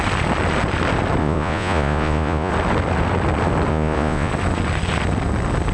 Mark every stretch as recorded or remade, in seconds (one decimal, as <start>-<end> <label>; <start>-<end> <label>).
0.0-1.2 recorded; 1.2-2.5 remade; 2.5-3.7 recorded; 3.7-4.3 remade; 4.3-5.7 recorded